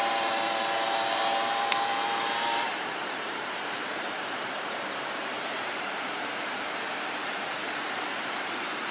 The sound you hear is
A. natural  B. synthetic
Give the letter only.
B